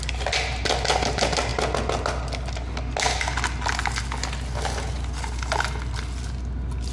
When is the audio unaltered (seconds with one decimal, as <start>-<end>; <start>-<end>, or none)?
0.0-6.9